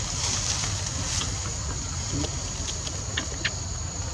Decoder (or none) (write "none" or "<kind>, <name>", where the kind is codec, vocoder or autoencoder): none